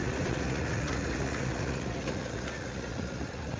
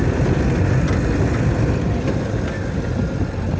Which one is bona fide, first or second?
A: second